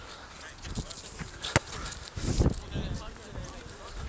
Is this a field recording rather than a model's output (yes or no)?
yes